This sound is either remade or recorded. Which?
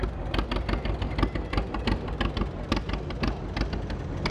recorded